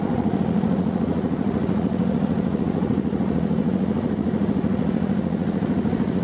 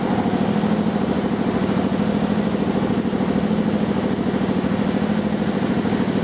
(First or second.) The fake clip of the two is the first